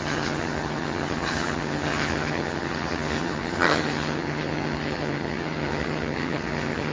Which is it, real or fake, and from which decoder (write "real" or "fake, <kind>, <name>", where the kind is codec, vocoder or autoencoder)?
fake, vocoder, HiFi-GAN